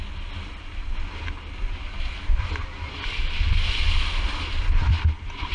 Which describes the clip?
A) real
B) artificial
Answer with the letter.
A